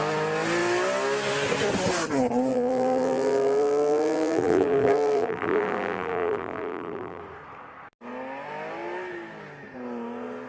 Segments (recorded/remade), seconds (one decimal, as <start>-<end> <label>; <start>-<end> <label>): 0.0-2.5 recorded; 2.5-7.2 remade; 7.2-10.5 recorded